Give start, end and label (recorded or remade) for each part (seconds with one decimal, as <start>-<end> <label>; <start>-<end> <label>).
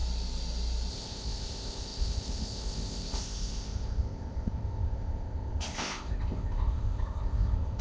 0.0-0.9 recorded; 0.9-7.8 remade